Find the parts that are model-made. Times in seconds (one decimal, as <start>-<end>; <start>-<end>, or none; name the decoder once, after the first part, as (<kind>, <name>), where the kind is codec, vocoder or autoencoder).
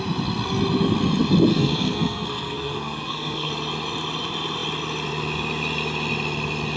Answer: 1.5-3.5 (codec, SNAC)